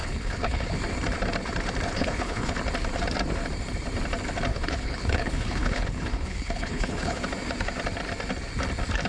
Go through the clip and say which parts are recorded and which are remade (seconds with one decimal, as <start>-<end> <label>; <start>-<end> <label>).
0.0-0.7 remade; 0.7-2.0 recorded; 2.0-2.6 remade; 2.6-4.5 recorded; 4.5-7.2 remade; 7.2-9.1 recorded